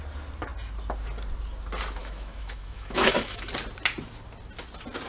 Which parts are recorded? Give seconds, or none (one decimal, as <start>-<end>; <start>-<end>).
0.0-2.0; 3.5-5.1